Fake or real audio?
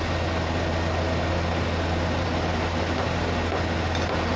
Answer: real